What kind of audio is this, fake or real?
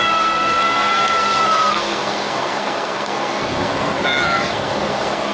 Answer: fake